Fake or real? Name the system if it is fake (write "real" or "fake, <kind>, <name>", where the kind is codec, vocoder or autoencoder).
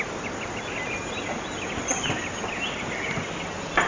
real